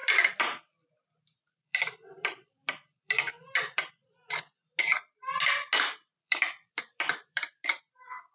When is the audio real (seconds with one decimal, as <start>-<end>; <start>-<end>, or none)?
0.9-1.4; 3.9-6.2; 7.8-8.3